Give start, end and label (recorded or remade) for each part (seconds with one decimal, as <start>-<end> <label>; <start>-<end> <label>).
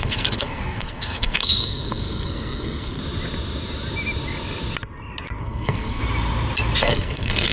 0.0-3.0 remade; 3.0-5.4 recorded; 5.4-6.0 remade; 6.0-6.8 recorded; 6.8-7.5 remade